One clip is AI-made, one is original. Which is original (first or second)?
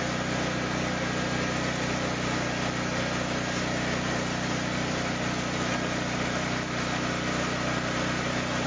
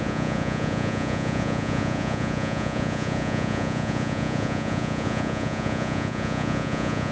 first